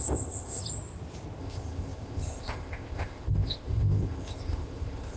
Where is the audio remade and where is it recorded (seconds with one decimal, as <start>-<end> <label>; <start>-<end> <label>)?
0.0-0.6 remade; 0.6-1.4 recorded; 1.4-5.2 remade